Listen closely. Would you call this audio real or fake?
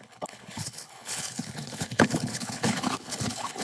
fake